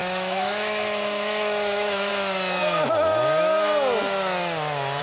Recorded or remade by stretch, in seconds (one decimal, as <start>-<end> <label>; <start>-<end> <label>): 0.0-2.1 remade; 2.1-5.0 recorded